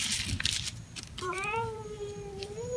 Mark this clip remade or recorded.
remade